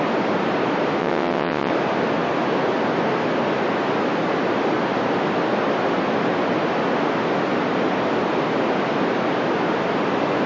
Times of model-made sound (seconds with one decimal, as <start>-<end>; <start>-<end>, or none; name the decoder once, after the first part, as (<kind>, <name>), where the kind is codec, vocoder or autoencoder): 1.0-1.7 (vocoder, WaveNeXt)